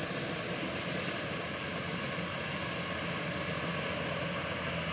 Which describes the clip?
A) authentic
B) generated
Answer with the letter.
A